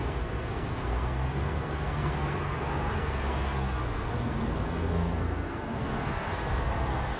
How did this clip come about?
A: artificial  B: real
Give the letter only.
A